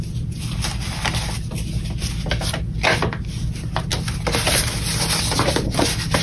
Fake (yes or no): no